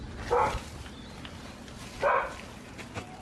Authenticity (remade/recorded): recorded